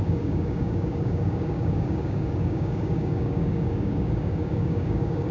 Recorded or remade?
remade